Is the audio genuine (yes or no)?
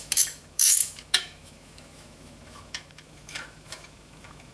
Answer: no